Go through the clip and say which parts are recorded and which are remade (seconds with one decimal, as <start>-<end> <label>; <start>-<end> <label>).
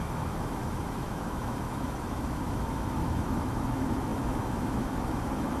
0.0-5.6 remade